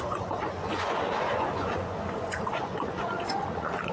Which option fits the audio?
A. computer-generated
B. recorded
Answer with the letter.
A